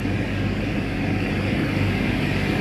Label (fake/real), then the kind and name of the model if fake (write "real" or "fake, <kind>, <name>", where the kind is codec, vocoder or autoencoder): fake, codec, DAC